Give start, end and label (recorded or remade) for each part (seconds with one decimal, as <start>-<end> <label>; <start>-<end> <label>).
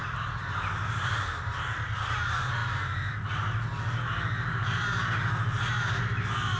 0.0-2.6 remade; 2.6-6.6 recorded